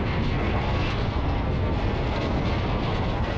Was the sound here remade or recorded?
remade